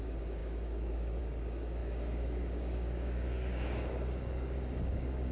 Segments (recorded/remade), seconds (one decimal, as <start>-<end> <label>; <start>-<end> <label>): 0.0-5.3 remade